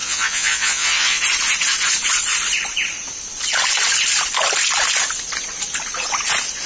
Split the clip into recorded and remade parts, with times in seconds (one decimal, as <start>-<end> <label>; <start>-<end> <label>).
0.0-1.2 remade; 1.2-6.7 recorded